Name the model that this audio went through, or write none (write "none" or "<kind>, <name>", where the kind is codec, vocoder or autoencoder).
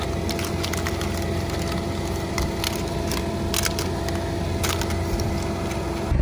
none